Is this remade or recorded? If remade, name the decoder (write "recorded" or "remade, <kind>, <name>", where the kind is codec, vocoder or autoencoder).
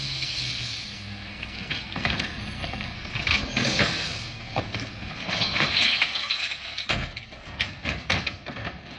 remade, codec, SNAC